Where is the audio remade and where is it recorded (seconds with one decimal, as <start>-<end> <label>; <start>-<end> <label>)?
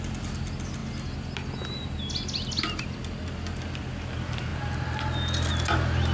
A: 0.0-6.1 recorded